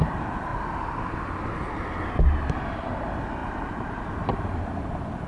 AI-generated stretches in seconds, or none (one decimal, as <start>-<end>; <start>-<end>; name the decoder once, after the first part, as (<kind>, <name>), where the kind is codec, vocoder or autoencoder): 0.0-0.5 (vocoder, BigVGAN v2); 2.8-5.3